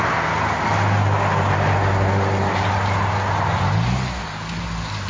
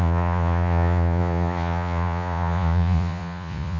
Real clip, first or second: first